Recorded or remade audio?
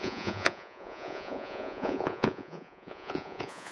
remade